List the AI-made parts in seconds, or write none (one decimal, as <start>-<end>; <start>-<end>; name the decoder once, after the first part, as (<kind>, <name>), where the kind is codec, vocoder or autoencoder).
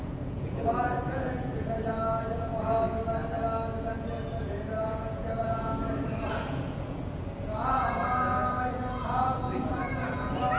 0.0-3.0 (vocoder, Vocos); 3.9-5.7; 6.3-10.6